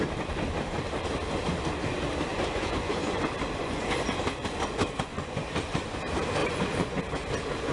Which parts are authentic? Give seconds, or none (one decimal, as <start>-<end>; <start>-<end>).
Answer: 0.0-2.3; 3.2-3.6; 6.0-6.4; 7.0-7.7